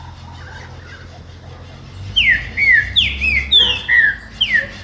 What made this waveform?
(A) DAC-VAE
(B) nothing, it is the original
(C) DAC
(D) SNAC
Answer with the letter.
B